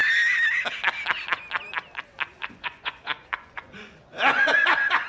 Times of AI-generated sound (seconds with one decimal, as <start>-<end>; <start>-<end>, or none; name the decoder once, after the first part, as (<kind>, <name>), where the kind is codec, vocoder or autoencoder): 2.3-5.1 (vocoder, Vocos)